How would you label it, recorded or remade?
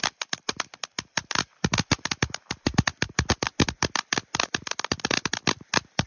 remade